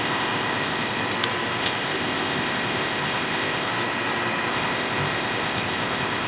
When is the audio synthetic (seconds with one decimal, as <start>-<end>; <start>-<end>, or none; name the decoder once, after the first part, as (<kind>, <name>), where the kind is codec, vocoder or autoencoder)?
0.0-1.0 (codec, ZipCodec); 1.6-3.7; 4.5-6.3